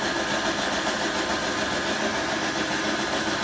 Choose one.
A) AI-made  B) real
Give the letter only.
B